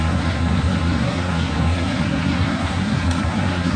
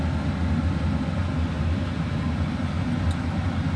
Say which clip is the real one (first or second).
second